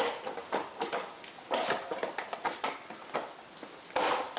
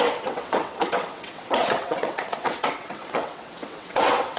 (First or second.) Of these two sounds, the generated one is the second